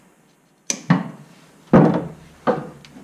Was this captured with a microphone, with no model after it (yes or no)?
yes